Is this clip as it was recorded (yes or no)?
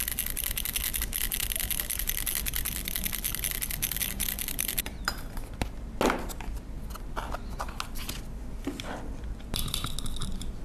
yes